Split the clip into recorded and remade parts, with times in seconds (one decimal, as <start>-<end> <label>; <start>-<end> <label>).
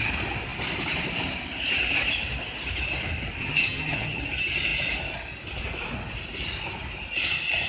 0.0-3.4 recorded; 3.4-4.2 remade; 4.2-7.7 recorded